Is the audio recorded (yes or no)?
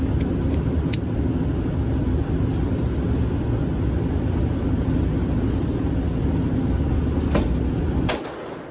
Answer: yes